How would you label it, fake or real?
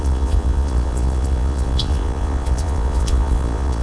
fake